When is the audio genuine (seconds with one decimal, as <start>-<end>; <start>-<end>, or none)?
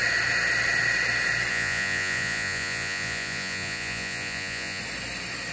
0.0-1.5; 4.8-5.5